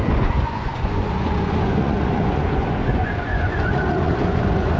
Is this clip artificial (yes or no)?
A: yes